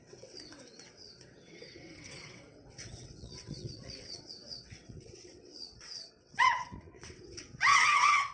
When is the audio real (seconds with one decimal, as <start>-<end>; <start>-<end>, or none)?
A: none